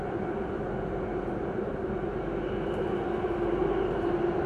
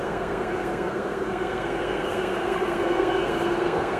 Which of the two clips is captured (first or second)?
first